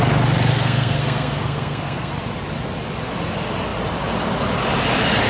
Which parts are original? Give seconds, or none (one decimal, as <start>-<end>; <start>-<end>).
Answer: 0.0-0.5; 2.1-5.3